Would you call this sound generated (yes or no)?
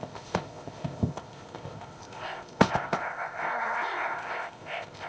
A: yes